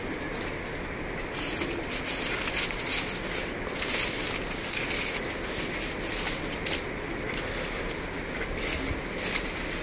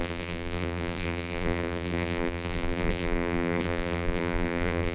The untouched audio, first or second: first